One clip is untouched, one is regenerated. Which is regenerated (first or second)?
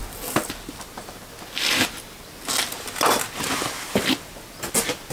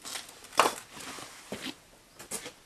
second